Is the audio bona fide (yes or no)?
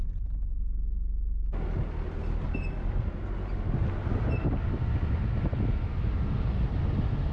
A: yes